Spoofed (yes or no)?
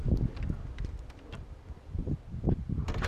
yes